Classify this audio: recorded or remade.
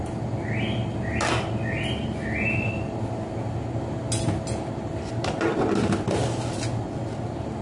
recorded